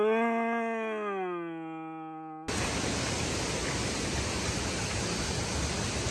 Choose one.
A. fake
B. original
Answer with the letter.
B